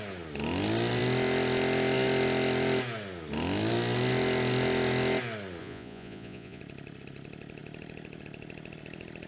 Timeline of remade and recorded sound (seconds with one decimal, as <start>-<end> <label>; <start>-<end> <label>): 0.0-5.6 recorded; 5.6-6.6 remade; 6.6-9.3 recorded